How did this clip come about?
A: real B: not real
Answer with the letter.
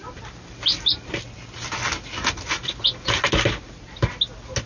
A